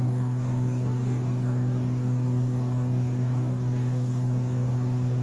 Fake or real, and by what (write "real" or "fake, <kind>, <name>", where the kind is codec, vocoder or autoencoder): fake, codec, DAC